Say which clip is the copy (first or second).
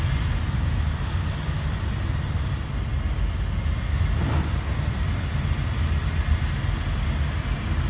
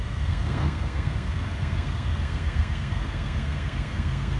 second